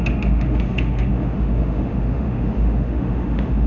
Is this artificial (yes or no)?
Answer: yes